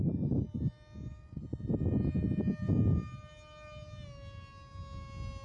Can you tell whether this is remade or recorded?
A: recorded